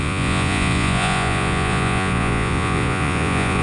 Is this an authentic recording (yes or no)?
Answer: no